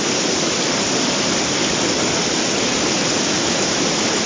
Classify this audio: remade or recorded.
recorded